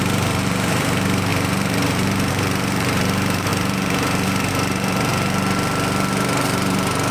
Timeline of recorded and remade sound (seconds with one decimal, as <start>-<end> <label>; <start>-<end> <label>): 0.0-5.1 remade; 5.1-6.2 recorded; 6.2-7.1 remade